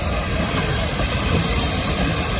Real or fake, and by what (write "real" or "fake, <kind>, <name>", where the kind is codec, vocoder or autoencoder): fake, vocoder, BigVGAN v2